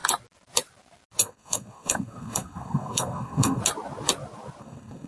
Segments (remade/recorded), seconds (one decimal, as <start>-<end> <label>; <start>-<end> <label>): 0.0-1.2 recorded; 1.2-3.6 remade; 3.6-4.6 recorded; 4.6-5.1 remade